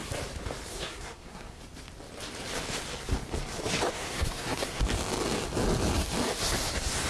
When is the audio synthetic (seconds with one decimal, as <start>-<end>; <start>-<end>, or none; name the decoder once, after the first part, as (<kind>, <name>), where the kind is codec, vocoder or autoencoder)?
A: 0.7-1.6 (codec, SNAC); 3.9-4.8